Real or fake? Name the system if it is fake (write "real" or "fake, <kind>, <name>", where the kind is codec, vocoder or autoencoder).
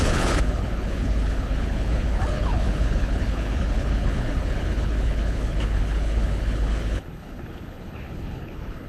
fake, codec, HILCodec